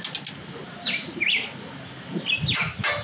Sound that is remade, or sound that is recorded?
recorded